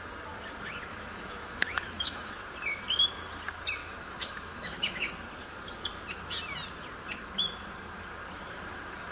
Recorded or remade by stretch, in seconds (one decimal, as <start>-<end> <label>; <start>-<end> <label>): 0.0-0.9 recorded; 0.9-2.3 remade; 2.3-3.8 recorded; 3.8-5.1 remade; 5.1-9.1 recorded